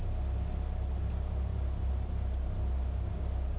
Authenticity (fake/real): real